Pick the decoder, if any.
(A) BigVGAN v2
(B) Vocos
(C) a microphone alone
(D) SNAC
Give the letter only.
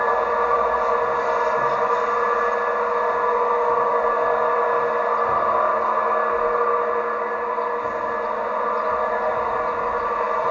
C